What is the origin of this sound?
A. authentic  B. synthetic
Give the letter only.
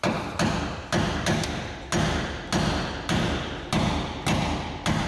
A